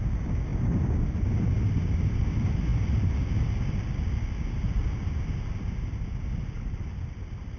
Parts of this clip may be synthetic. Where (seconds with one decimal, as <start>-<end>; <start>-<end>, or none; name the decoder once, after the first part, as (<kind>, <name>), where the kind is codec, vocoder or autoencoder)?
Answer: none